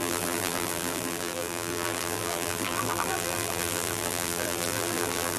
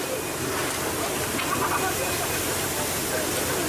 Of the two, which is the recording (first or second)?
second